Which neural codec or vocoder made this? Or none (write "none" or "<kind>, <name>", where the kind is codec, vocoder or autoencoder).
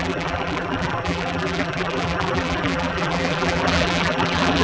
vocoder, BigVGAN v2